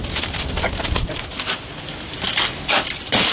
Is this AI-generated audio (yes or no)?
no